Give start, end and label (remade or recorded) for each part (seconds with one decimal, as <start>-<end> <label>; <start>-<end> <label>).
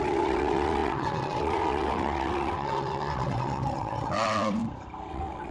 0.0-4.6 remade; 4.6-5.1 recorded; 5.1-5.5 remade